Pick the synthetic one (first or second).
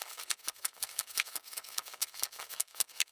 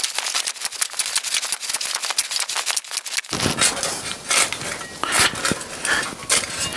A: first